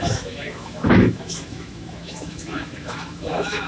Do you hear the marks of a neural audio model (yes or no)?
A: yes